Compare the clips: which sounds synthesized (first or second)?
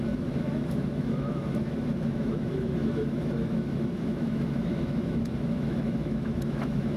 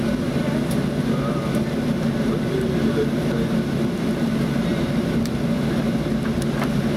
first